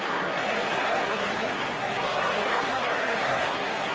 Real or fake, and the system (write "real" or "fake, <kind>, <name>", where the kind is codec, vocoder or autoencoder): fake, codec, SNAC